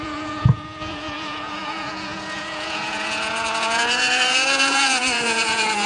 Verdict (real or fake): fake